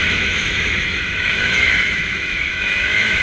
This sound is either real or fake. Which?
fake